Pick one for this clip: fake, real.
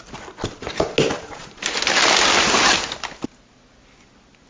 real